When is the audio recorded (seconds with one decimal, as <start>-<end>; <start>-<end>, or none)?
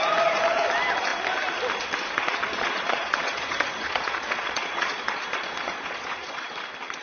0.0-2.2; 6.4-7.0